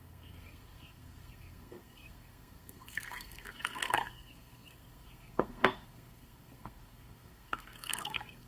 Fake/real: fake